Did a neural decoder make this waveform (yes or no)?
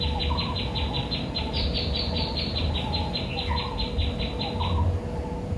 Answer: no